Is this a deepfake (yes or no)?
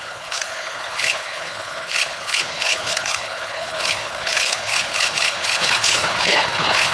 yes